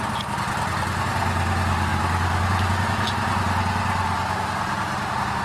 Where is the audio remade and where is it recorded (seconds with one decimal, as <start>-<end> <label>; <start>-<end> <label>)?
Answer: 0.0-5.4 recorded